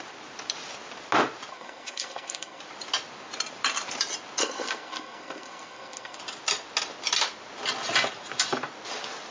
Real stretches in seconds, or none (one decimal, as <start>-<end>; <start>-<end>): 0.0-1.5; 2.6-4.4; 6.2-9.3